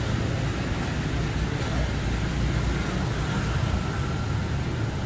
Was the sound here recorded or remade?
recorded